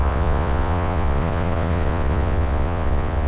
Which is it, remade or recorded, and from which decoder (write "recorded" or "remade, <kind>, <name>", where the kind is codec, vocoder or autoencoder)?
remade, vocoder, Vocos